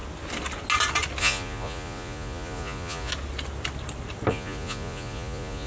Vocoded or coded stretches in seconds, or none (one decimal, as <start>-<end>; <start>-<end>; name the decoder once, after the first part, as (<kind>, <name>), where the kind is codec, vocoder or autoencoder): 1.2-3.1 (vocoder, Vocos); 4.3-5.7